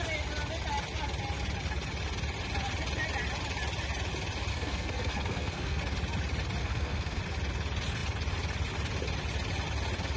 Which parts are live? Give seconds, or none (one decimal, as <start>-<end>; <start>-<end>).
0.0-4.5; 5.8-6.6; 7.2-10.2